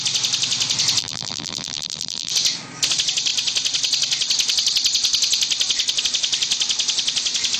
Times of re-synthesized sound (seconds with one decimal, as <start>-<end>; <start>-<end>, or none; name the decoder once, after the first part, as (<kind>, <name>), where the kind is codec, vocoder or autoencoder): 1.0-2.3 (vocoder, BigVGAN v2)